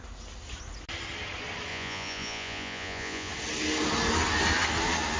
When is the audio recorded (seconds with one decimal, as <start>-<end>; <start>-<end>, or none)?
0.0-1.7; 3.3-5.2